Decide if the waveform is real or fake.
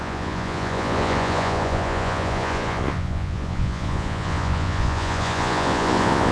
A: fake